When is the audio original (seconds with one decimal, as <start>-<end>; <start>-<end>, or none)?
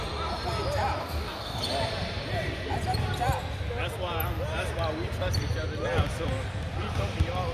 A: 0.0-1.0; 1.6-7.5